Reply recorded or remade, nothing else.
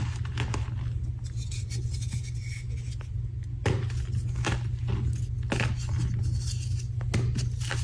recorded